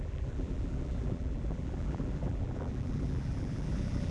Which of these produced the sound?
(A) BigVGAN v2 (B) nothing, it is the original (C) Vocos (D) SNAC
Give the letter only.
A